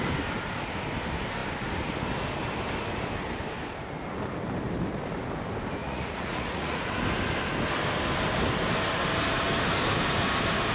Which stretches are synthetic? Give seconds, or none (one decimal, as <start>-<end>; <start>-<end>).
5.8-6.9